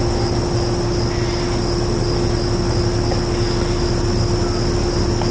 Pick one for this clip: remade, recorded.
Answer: recorded